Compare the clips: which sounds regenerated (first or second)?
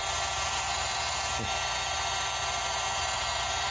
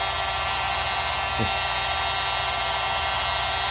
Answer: first